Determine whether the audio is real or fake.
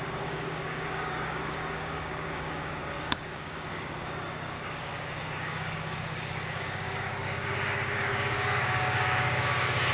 fake